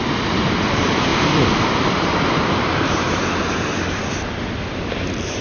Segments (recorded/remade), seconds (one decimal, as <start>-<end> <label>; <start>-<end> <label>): 0.0-5.4 remade